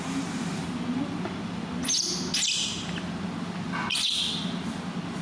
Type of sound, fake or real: real